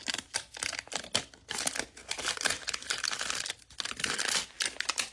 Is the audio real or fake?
real